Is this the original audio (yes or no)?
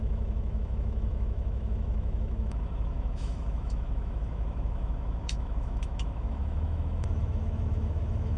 no